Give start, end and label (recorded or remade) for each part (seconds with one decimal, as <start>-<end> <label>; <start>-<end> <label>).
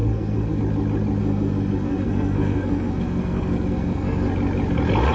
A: 0.0-0.6 remade; 0.6-1.2 recorded; 1.2-4.3 remade; 4.3-5.1 recorded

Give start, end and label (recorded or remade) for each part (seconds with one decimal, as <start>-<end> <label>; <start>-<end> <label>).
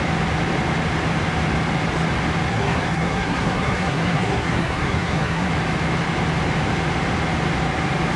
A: 0.0-2.5 recorded; 2.5-5.5 remade; 5.5-8.2 recorded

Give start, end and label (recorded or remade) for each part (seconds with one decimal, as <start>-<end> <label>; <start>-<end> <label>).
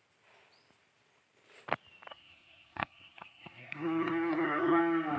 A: 0.0-2.1 recorded; 2.1-4.8 remade; 4.8-5.2 recorded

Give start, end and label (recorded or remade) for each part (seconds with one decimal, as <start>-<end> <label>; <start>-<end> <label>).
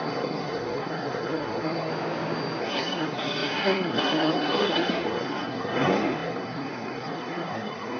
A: 0.0-1.9 remade; 1.9-2.6 recorded; 2.6-8.0 remade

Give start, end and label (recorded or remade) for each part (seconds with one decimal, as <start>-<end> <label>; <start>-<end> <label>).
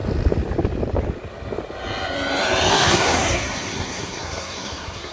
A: 0.0-2.7 recorded; 2.7-5.1 remade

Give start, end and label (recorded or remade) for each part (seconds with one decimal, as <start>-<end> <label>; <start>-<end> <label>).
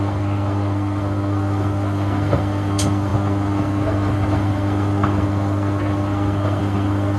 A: 0.0-7.2 remade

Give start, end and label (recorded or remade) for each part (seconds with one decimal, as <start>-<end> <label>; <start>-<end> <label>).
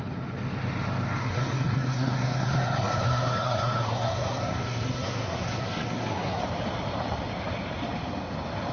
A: 0.0-1.2 recorded; 1.2-6.4 remade; 6.4-8.7 recorded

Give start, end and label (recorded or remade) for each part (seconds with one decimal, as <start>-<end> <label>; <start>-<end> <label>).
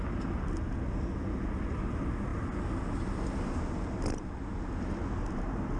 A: 0.0-5.8 recorded